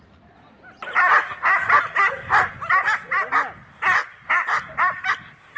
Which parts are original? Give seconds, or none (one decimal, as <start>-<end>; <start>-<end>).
0.0-5.6

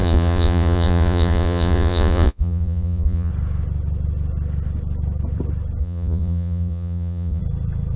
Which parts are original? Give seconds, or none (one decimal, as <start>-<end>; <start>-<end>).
3.3-5.8; 7.4-8.0

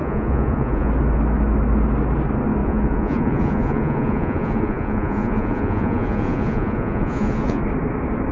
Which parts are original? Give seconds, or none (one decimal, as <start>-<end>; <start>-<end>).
0.9-2.6; 7.6-8.3

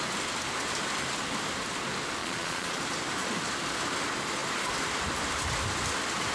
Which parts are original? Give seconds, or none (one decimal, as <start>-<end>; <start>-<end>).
0.0-2.2; 2.8-6.3